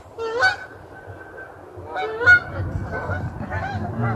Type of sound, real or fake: real